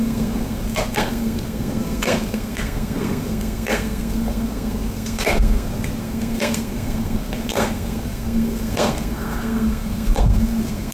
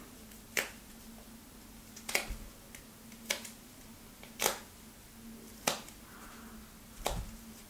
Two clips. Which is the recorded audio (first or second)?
second